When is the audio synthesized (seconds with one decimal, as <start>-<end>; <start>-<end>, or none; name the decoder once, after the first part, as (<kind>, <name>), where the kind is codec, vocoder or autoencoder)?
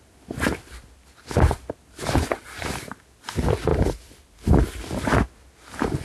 none